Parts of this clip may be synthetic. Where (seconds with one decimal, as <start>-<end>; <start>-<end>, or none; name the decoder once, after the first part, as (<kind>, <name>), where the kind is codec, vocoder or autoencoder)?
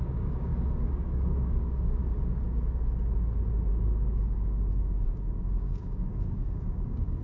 0.0-2.0 (codec, DAC); 3.7-7.2